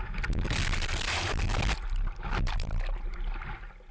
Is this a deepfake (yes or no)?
yes